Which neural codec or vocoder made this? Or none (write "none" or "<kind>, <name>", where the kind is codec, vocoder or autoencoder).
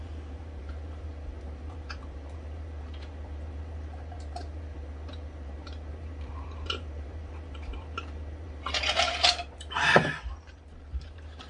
vocoder, BigVGAN v2